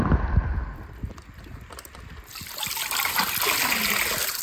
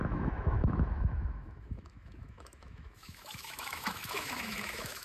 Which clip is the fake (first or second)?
second